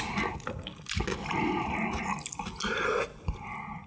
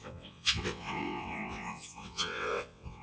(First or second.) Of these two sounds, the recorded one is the first